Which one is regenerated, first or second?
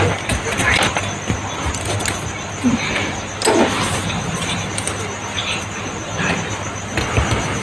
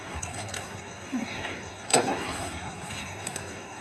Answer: second